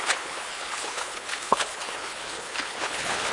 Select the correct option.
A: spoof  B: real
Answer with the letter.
A